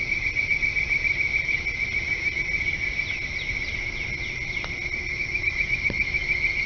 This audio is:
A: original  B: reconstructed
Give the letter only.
A